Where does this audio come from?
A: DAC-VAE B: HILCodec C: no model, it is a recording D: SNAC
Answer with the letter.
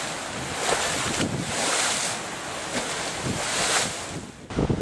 C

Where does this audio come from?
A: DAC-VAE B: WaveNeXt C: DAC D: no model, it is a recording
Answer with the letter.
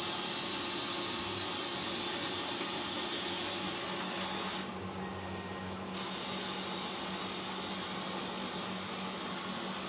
D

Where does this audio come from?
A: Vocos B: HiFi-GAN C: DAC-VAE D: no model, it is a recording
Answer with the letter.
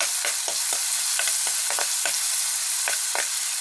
D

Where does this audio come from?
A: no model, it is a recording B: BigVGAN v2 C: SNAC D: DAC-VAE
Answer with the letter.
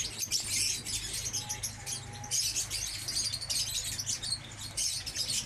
A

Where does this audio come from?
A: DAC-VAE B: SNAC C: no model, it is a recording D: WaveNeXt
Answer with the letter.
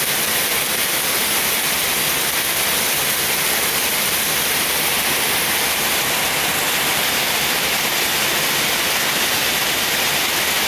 C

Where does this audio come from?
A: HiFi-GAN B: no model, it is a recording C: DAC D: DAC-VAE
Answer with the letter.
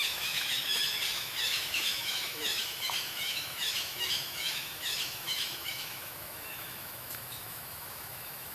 D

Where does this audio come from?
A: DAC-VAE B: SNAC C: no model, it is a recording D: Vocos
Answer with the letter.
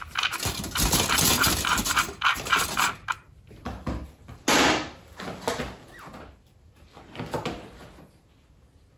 C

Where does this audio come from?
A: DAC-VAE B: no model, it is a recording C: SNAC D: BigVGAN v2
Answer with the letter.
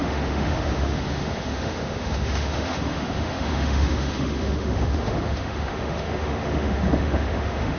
A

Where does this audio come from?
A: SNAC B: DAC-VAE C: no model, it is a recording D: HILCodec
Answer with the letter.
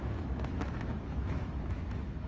B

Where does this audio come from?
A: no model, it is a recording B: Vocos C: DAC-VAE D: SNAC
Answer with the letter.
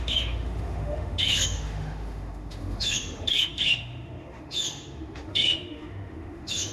C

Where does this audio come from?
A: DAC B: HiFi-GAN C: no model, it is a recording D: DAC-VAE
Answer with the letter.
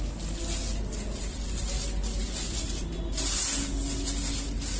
C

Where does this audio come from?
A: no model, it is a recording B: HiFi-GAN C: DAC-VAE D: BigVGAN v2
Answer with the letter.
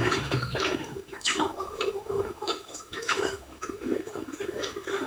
C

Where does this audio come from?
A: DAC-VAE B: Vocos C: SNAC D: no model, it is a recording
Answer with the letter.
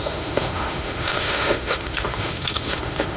A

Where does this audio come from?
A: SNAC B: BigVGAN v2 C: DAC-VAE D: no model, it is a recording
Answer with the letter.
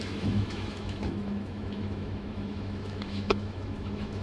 C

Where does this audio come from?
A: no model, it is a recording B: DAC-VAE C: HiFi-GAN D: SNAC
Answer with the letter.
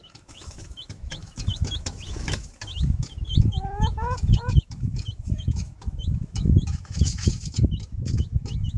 B